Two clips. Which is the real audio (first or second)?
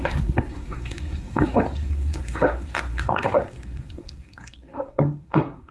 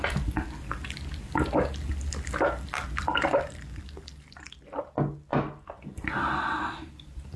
second